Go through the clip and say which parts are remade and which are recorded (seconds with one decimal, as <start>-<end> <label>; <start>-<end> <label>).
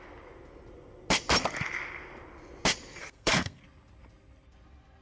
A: 0.0-3.0 recorded; 3.0-3.6 remade; 3.6-5.0 recorded